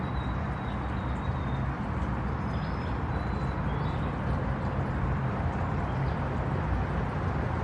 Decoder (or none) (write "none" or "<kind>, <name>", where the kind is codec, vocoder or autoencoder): none